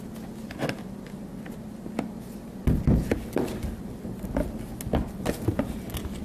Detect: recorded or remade recorded